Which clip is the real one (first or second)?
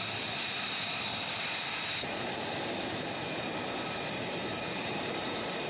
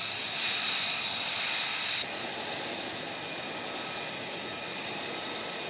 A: second